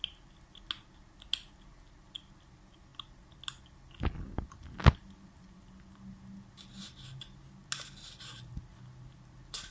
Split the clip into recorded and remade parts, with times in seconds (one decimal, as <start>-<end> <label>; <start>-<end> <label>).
0.0-9.7 recorded